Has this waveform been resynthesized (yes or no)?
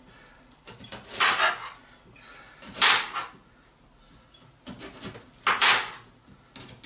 no